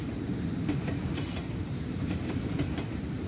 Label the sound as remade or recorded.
remade